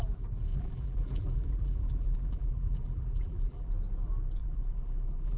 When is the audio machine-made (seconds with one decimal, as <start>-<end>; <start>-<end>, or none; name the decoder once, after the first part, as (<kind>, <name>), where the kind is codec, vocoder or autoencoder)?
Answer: 0.5-3.7 (vocoder, BigVGAN v2); 4.4-5.4